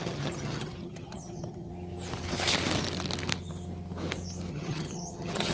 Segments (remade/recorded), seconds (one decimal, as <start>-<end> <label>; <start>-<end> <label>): 0.0-1.7 remade; 1.7-4.5 recorded; 4.5-5.5 remade